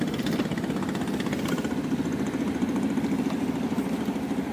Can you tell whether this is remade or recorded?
recorded